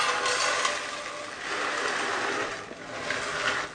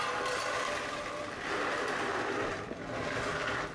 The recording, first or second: first